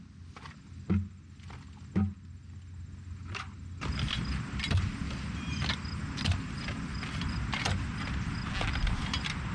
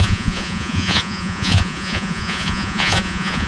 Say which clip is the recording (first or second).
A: first